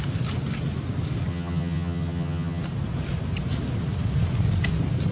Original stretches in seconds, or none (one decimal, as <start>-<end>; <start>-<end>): 0.0-1.3; 2.6-5.1